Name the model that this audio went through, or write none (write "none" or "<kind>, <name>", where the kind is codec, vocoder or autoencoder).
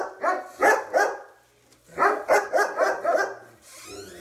none